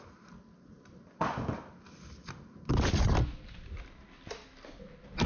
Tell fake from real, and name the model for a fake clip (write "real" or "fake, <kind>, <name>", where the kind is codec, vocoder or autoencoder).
real